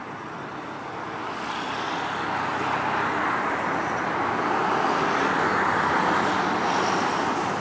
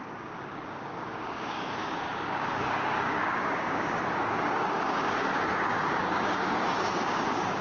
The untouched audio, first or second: first